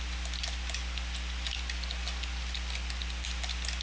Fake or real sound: real